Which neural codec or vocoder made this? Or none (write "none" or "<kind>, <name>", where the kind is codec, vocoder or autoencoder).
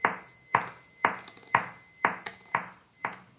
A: none